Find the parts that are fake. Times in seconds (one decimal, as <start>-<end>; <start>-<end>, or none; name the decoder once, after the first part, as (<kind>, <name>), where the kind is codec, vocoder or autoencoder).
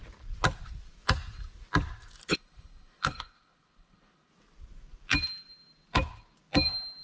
2.2-4.3 (codec, HILCodec)